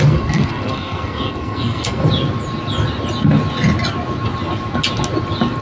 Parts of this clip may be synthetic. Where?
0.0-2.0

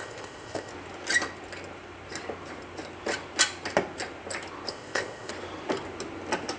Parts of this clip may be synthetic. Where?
0.0-0.7; 4.7-5.3

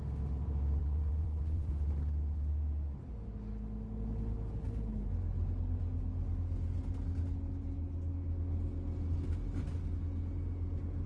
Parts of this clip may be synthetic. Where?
0.8-1.7

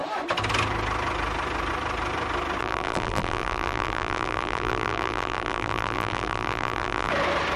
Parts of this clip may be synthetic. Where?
2.6-7.1

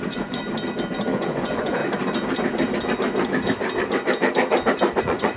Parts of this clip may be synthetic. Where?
0.0-0.4; 1.1-1.8; 5.0-5.4